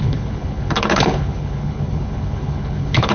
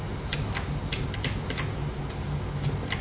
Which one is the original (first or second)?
second